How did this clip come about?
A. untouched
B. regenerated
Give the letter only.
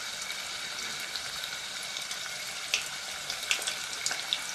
A